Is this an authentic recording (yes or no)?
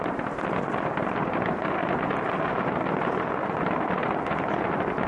yes